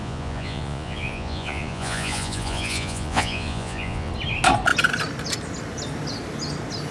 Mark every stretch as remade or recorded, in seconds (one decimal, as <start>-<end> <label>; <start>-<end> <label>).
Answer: 0.0-4.1 remade; 4.1-6.9 recorded